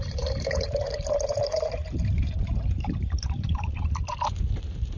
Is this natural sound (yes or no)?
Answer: no